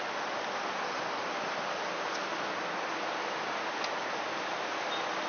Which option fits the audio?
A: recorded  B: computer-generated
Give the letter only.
A